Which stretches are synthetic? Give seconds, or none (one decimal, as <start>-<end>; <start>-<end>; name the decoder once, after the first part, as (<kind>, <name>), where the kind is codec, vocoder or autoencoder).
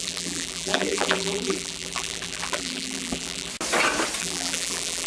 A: 0.0-3.5 (vocoder, BigVGAN v2); 4.2-5.1